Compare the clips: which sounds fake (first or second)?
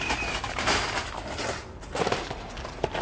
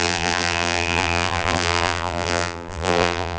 second